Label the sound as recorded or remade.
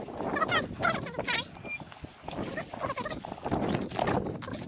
recorded